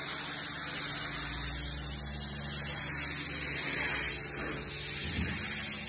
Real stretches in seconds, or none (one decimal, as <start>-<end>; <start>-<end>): 0.0-5.9